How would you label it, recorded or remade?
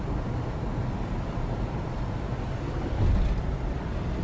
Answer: recorded